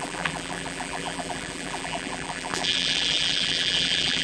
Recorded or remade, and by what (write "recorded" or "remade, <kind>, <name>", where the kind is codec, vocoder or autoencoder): remade, vocoder, BigVGAN v2